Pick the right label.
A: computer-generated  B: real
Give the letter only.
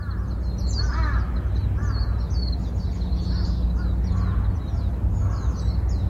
B